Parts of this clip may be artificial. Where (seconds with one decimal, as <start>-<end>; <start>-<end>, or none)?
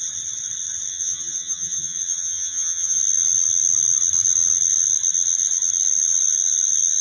0.9-3.0